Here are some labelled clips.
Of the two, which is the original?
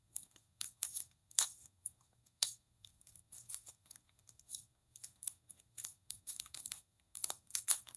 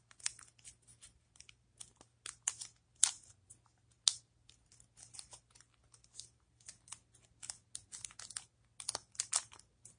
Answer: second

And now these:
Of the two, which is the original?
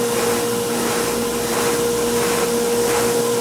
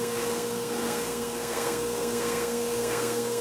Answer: first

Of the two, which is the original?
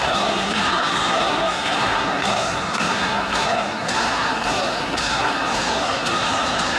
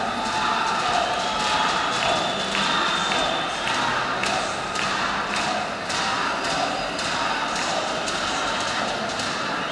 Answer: second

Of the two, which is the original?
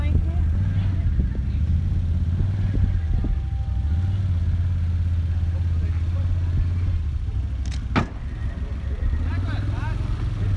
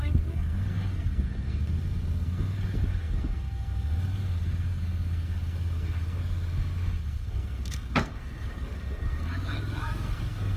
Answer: first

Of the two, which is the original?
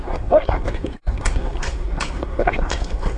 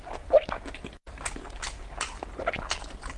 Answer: second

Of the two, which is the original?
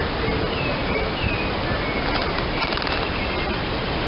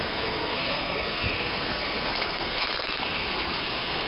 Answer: first